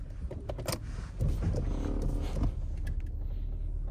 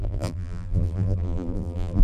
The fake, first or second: second